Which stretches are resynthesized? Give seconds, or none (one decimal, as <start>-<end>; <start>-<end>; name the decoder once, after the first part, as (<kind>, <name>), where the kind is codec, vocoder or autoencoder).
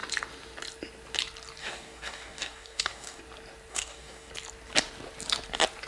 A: 1.6-3.2 (codec, DAC); 3.7-4.3